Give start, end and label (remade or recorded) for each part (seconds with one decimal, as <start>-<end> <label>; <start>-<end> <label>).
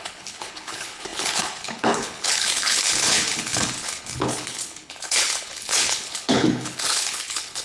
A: 0.0-7.6 remade